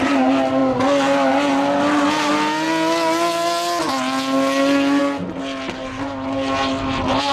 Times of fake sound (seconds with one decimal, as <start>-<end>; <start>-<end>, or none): none